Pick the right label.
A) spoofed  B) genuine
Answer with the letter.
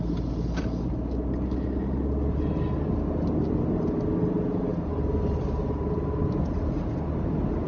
B